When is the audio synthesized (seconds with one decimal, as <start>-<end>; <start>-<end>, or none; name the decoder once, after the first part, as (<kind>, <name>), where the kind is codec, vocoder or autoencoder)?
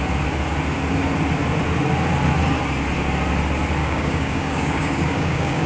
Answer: 3.8-5.7 (codec, DAC)